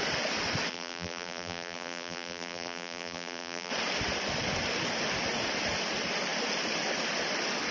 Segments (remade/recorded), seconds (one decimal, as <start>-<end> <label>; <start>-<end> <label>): 0.0-0.7 recorded; 0.7-3.7 remade; 3.7-7.7 recorded